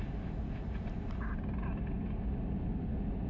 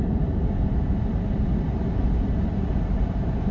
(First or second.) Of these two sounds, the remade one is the second